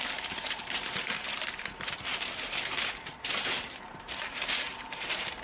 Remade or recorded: remade